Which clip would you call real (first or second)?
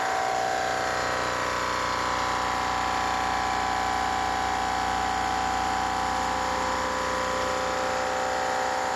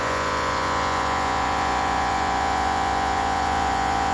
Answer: first